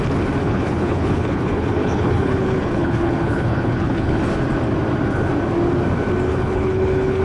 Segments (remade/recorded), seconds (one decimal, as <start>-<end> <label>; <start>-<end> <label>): 0.0-0.4 recorded; 0.4-4.2 remade; 4.2-6.3 recorded; 6.3-7.2 remade